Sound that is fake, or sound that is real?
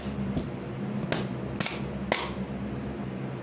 real